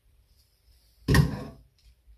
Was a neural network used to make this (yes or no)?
yes